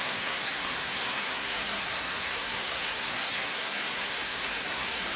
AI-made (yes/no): yes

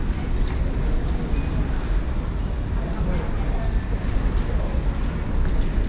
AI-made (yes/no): no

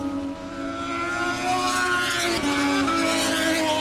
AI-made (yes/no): no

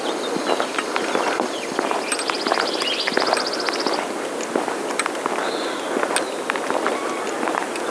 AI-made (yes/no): no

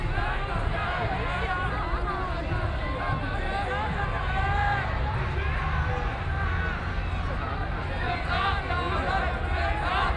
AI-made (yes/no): no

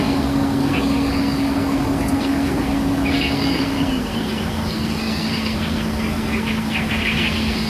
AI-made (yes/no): yes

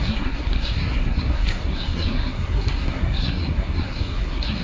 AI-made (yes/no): yes